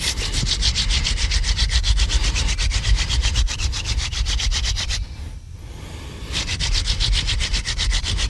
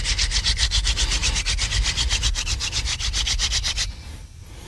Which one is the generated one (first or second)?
first